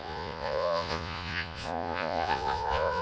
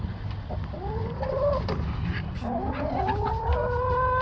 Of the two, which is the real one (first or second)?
second